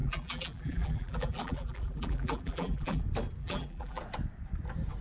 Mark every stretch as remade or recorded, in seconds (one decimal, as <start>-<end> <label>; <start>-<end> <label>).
0.0-3.0 remade; 3.0-3.4 recorded; 3.4-4.0 remade; 4.0-5.0 recorded